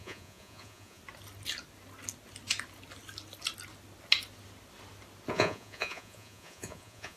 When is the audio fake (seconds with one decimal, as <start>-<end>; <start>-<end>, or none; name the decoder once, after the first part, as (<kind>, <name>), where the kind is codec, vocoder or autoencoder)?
0.0-1.0 (vocoder, Vocos); 5.3-7.2